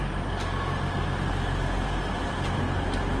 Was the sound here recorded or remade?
recorded